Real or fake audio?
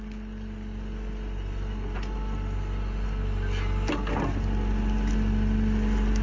real